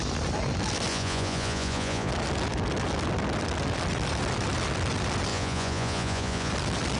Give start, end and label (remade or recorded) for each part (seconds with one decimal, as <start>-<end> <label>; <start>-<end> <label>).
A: 0.0-0.9 recorded; 0.9-2.1 remade; 2.1-5.3 recorded; 5.3-6.5 remade; 6.5-7.0 recorded